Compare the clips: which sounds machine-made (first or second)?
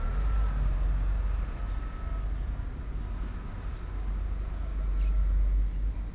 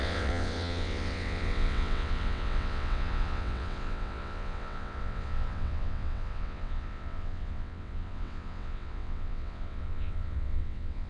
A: second